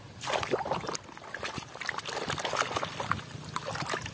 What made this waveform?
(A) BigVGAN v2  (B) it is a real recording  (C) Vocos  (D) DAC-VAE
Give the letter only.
B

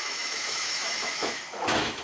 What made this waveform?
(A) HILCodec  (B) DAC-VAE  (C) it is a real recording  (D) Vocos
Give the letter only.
B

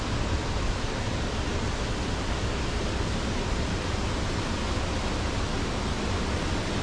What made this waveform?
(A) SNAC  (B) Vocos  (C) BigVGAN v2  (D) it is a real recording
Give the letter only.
D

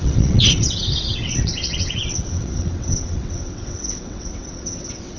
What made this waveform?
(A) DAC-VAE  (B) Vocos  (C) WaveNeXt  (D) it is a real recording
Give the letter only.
C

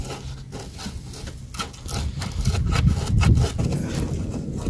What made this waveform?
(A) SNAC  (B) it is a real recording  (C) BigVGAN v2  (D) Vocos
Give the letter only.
B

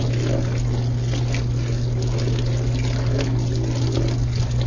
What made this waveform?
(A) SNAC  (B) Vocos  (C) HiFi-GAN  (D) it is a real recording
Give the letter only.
D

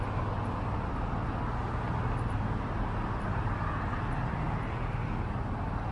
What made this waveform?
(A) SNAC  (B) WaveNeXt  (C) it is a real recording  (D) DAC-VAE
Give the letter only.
C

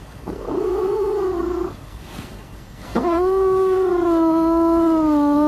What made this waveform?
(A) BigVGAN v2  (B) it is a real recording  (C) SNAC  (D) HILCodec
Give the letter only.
C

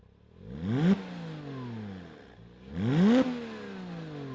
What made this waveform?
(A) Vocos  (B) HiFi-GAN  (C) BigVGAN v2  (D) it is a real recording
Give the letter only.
D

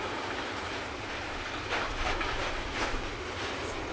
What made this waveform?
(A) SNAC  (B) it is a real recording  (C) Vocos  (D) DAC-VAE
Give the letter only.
B